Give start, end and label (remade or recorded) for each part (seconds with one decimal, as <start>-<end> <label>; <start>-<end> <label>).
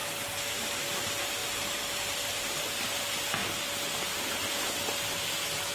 0.0-0.9 remade; 0.9-1.4 recorded; 1.4-2.7 remade; 2.7-5.7 recorded